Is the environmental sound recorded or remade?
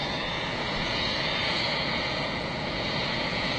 remade